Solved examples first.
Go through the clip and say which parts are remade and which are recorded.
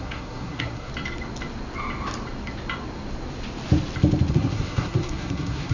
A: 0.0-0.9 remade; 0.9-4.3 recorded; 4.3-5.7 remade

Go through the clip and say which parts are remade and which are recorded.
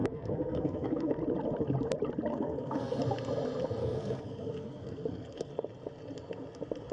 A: 0.0-1.2 remade; 1.2-2.3 recorded; 2.3-3.0 remade; 3.0-3.8 recorded; 3.8-5.5 remade; 5.5-6.9 recorded